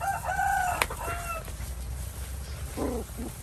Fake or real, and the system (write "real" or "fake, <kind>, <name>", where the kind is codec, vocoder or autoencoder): real